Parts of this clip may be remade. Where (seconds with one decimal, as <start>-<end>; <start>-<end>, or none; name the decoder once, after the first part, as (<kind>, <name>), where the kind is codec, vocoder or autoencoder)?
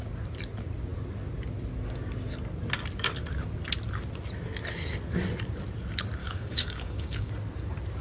6.2-7.3 (codec, DAC)